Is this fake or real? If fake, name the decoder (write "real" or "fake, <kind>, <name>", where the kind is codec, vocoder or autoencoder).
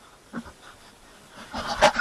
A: fake, vocoder, BigVGAN v2